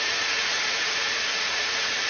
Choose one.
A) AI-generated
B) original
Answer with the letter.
A